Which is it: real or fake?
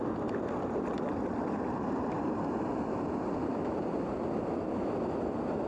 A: real